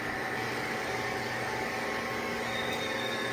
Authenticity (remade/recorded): remade